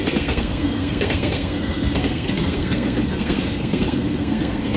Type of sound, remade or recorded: remade